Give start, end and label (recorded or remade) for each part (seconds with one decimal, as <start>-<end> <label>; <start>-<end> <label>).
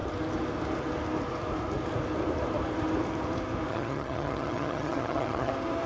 0.0-3.7 recorded; 3.7-5.5 remade; 5.5-5.9 recorded